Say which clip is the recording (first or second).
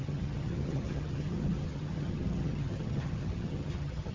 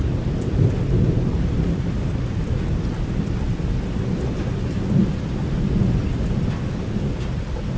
second